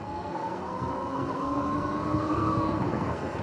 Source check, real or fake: fake